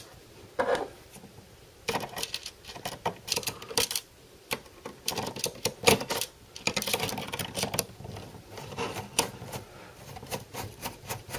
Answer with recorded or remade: remade